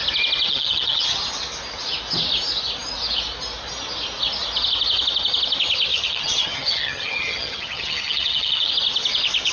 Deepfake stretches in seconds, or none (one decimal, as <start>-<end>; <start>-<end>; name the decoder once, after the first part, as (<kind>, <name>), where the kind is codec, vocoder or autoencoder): 0.5-1.2 (vocoder, HiFi-GAN); 5.9-8.7